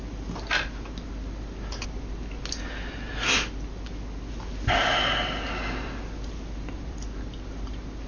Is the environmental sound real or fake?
real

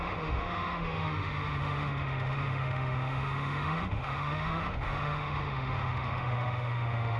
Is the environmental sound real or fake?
fake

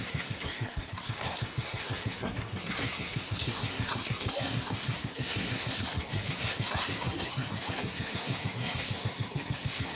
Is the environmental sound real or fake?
fake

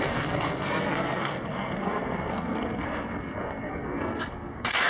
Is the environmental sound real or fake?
fake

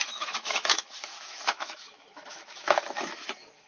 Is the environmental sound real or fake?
fake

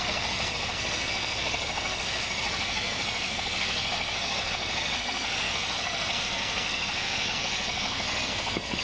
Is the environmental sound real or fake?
fake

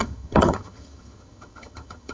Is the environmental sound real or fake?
fake